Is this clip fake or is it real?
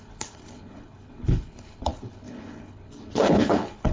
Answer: fake